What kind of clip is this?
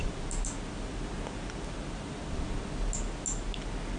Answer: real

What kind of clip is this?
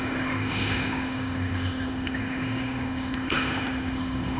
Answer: fake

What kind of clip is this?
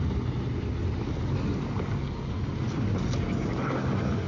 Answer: real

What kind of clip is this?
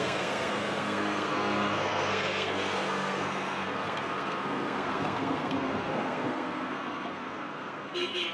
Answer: fake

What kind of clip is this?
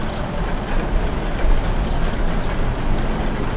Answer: real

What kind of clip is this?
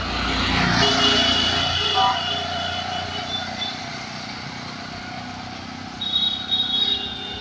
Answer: real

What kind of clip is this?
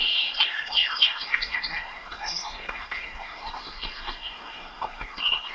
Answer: fake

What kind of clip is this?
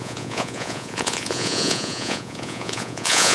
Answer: fake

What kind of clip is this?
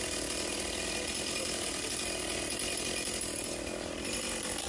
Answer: real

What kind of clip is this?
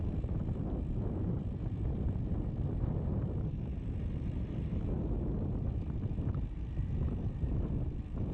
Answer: fake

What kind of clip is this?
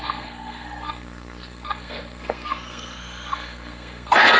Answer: fake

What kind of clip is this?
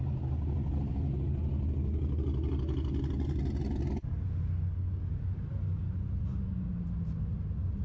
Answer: real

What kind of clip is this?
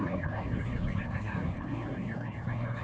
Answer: fake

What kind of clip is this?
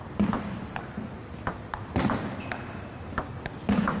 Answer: real